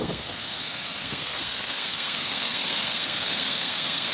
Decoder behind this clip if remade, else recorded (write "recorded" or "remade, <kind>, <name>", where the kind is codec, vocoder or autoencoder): remade, codec, SNAC